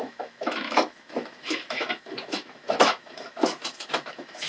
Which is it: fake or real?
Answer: fake